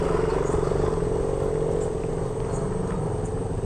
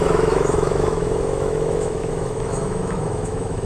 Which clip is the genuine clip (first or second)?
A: first